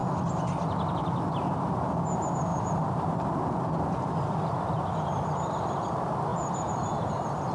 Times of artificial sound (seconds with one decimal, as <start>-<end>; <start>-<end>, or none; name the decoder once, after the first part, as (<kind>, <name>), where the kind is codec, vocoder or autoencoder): 2.5-4.5 (vocoder, BigVGAN v2); 6.3-7.1